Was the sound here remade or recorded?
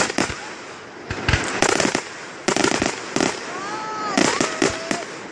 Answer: recorded